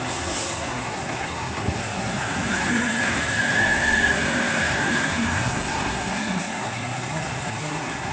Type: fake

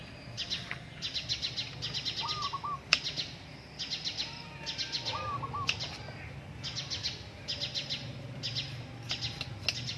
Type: real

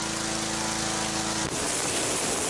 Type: real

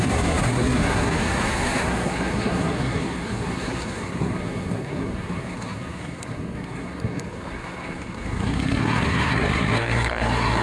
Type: fake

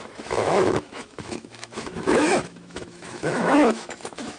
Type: fake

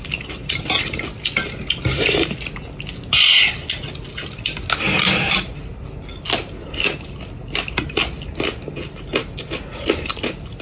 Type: real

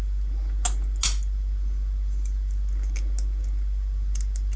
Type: real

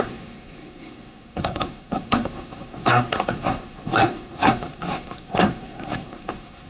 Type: fake